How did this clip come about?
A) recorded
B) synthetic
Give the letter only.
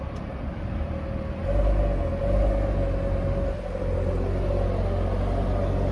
A